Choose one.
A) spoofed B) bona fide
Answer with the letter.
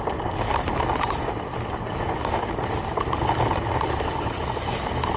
B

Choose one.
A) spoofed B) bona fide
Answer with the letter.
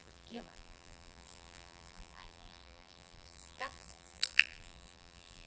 A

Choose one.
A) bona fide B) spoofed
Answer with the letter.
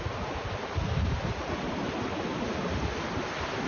A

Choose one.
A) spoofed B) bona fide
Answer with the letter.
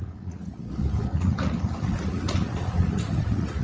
A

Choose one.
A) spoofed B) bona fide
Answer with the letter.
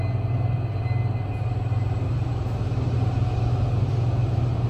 B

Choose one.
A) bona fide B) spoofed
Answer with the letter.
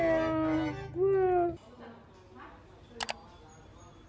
A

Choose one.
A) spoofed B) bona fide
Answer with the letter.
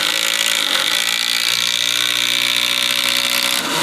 B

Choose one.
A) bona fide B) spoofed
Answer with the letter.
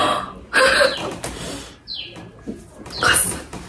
A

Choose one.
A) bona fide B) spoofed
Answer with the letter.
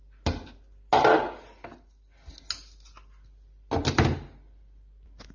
A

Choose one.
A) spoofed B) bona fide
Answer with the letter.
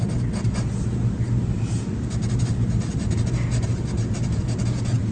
B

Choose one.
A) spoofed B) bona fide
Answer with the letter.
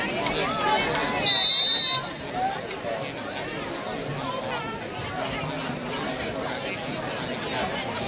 B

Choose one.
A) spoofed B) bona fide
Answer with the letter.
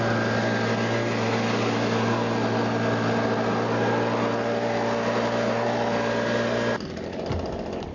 B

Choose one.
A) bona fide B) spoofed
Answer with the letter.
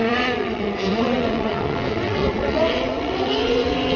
B